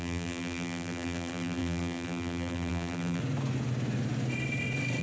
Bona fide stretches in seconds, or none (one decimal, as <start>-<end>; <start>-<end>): 3.2-5.0